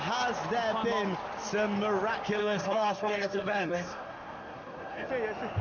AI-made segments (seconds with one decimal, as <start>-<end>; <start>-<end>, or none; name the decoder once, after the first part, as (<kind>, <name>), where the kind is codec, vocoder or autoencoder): 2.4-5.1 (codec, SNAC)